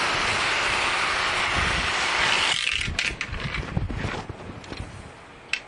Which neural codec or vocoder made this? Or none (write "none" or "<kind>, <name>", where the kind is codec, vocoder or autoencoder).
none